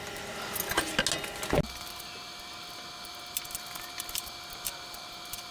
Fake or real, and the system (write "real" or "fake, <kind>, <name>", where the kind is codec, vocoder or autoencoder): real